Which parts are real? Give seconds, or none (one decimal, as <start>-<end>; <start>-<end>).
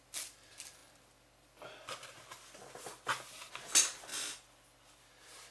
0.0-5.5